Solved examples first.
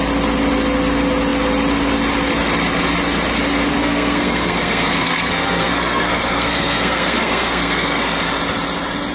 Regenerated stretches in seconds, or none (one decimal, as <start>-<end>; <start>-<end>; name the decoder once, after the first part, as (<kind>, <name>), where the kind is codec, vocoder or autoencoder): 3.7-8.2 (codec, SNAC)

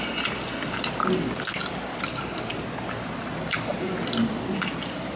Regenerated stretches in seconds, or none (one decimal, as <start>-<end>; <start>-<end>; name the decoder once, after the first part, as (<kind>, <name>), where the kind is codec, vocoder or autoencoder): none

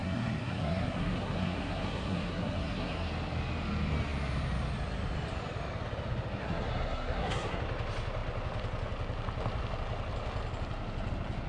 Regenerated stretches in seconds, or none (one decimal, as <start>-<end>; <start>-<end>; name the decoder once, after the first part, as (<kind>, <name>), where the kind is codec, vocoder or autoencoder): 0.0-3.1 (codec, SNAC); 6.4-7.6